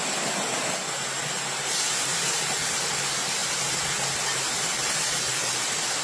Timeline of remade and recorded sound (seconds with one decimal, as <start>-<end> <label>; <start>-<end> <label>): 0.0-6.0 recorded